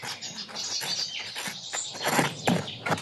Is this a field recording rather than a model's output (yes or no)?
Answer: yes